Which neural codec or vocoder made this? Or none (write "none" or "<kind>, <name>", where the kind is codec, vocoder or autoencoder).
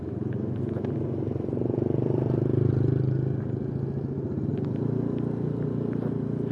none